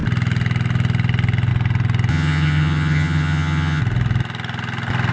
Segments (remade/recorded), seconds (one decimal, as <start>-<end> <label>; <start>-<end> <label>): 0.0-2.1 recorded; 2.1-3.8 remade; 3.8-5.1 recorded